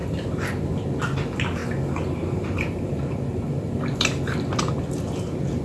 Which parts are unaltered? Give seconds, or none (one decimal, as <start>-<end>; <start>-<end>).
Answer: 0.0-5.6